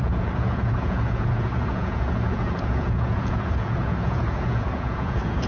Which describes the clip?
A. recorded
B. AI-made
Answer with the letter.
B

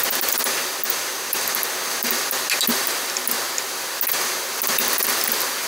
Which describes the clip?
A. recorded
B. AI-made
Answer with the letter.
A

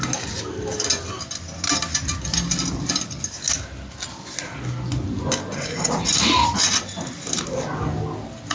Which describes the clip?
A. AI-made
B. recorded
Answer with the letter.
B